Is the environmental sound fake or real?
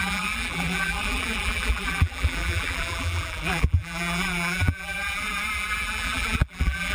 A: fake